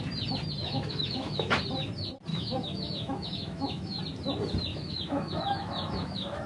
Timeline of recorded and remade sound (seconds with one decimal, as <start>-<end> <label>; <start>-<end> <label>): 0.0-0.6 recorded; 0.6-1.6 remade; 1.6-2.3 recorded; 2.3-4.0 remade; 4.0-4.7 recorded; 4.7-6.5 remade